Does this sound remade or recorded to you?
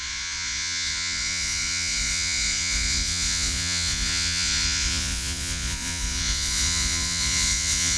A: remade